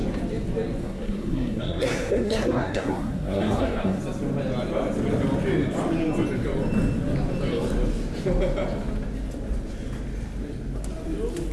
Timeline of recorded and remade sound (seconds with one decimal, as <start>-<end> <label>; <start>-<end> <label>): 0.0-0.8 recorded; 0.8-4.0 remade; 4.0-11.5 recorded